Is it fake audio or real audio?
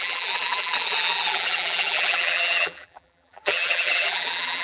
fake